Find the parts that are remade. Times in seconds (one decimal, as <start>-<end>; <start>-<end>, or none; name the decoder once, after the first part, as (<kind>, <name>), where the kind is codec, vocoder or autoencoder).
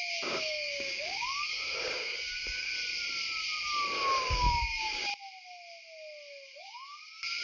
0.0-2.7 (codec, DAC); 4.2-5.1; 6.6-7.4